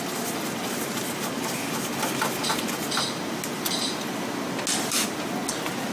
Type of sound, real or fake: real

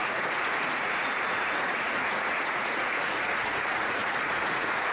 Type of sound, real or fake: fake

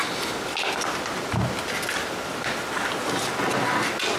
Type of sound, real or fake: real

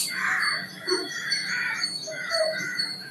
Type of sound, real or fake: fake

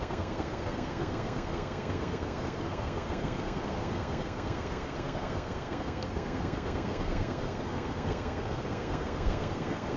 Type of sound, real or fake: fake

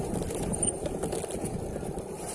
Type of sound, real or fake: real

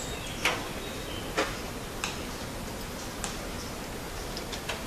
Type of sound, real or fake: real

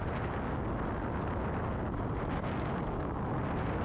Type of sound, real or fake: real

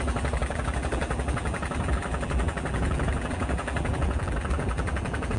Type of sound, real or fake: fake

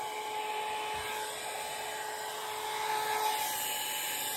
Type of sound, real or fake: real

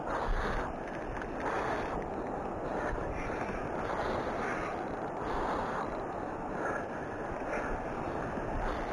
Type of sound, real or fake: real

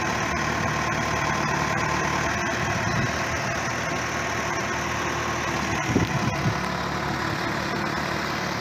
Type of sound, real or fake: real